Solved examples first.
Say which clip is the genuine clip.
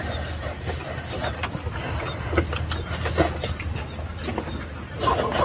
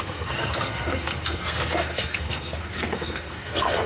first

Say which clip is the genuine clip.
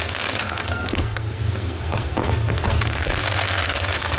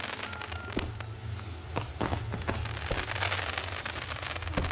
second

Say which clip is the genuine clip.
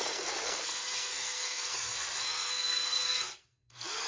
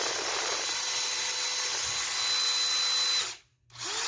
second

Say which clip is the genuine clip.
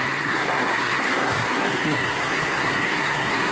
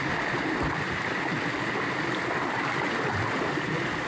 second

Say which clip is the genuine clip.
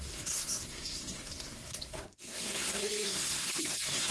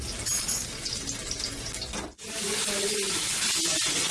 second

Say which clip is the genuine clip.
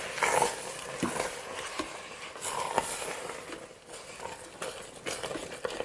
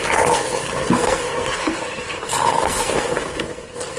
first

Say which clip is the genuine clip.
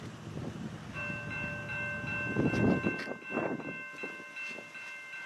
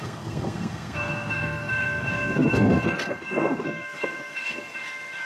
first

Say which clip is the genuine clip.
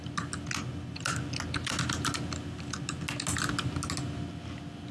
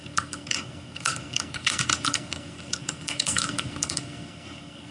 first